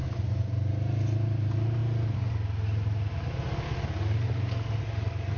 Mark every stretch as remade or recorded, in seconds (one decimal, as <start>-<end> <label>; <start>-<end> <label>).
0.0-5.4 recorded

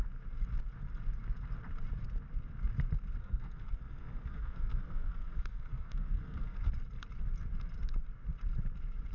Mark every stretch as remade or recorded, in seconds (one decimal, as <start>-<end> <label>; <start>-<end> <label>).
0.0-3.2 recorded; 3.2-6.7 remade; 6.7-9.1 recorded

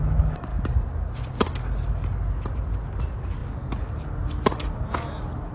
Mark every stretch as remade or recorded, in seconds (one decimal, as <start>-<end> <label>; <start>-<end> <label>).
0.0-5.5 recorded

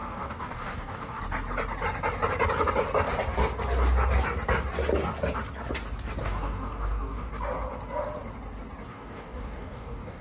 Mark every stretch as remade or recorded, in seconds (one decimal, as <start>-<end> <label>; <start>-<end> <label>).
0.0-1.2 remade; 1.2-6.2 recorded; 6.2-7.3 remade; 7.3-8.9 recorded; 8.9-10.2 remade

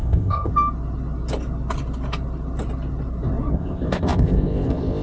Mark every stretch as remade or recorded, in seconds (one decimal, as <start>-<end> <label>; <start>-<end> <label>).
0.0-0.5 remade; 0.5-3.5 recorded; 3.5-5.0 remade

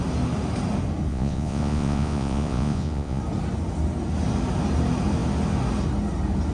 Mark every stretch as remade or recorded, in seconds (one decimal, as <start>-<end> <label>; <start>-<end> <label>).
0.0-1.1 recorded; 1.1-3.2 remade; 3.2-6.5 recorded

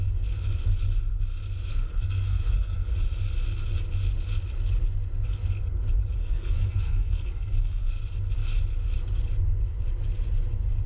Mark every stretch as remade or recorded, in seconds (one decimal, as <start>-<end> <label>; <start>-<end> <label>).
0.0-1.7 recorded; 1.7-2.9 remade; 2.9-6.2 recorded; 6.2-8.0 remade; 8.0-10.9 recorded